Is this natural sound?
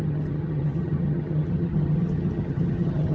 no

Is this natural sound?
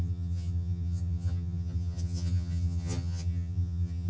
no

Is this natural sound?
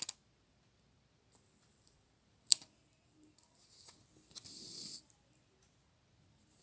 yes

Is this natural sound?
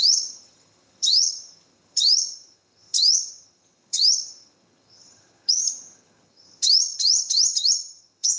no